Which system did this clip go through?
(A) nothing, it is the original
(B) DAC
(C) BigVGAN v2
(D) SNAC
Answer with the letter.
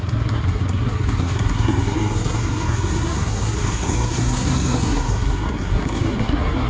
D